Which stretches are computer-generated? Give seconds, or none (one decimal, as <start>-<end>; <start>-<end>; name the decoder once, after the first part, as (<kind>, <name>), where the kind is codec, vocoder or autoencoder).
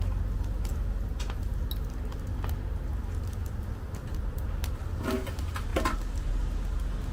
0.7-1.5 (vocoder, BigVGAN v2); 2.9-5.3; 5.7-6.3